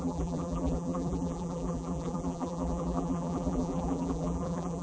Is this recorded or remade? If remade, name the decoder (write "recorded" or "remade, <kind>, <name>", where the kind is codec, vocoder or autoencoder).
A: remade, vocoder, BigVGAN v2